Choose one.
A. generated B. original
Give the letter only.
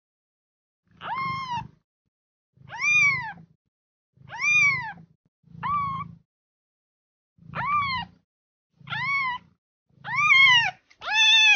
B